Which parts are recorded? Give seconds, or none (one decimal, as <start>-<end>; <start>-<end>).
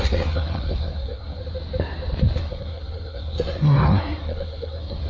1.4-2.4